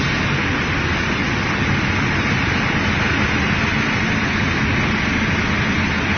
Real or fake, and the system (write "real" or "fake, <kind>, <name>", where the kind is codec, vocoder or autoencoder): real